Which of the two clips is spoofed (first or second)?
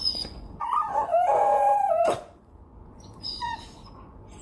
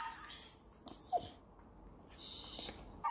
first